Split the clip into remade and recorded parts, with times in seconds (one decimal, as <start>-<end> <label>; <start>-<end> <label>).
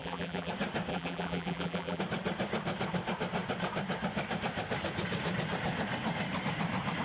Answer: 0.0-0.5 remade; 0.5-0.9 recorded; 0.9-2.0 remade; 2.0-7.0 recorded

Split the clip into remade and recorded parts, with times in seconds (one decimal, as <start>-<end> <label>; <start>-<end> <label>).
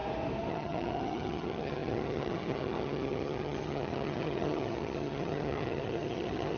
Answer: 0.0-0.5 recorded; 0.5-6.6 remade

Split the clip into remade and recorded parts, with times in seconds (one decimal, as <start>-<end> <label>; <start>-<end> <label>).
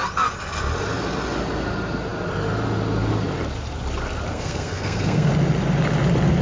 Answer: 0.0-4.3 recorded; 4.3-5.3 remade; 5.3-6.4 recorded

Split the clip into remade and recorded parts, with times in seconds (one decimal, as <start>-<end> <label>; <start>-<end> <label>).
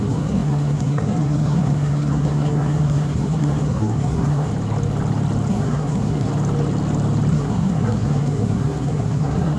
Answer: 0.0-4.5 remade; 4.5-5.5 recorded; 5.5-6.3 remade; 6.3-7.3 recorded; 7.3-9.6 remade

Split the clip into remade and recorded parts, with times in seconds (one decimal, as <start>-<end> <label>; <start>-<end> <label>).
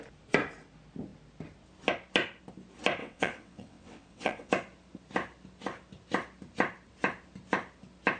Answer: 0.0-3.0 recorded; 3.0-4.5 remade; 4.5-8.2 recorded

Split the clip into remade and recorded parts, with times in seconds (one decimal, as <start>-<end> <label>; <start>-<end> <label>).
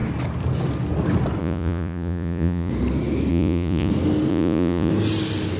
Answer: 0.0-1.4 recorded; 1.4-2.7 remade; 2.7-3.3 recorded; 3.3-3.9 remade; 3.9-4.3 recorded; 4.3-4.9 remade; 4.9-5.6 recorded